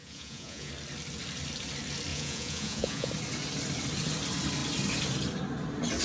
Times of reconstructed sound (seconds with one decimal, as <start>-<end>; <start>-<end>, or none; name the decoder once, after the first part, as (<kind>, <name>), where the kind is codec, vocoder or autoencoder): 0.0-0.7 (vocoder, Vocos); 2.1-3.1